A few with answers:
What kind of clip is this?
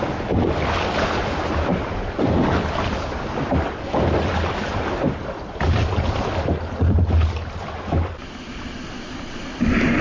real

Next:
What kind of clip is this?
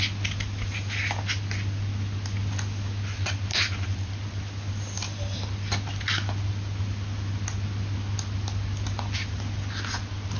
real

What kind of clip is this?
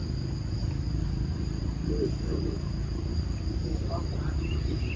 real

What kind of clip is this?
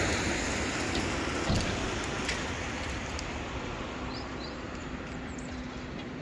real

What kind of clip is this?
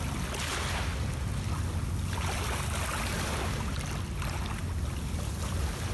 real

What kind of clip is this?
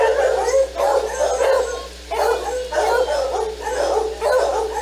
real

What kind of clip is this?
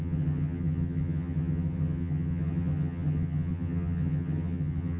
fake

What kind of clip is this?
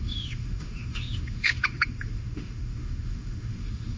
fake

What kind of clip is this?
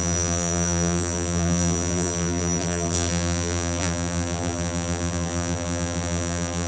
fake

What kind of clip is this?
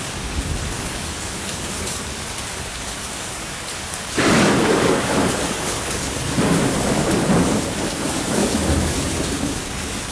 fake